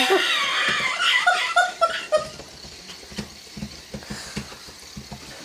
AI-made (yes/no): no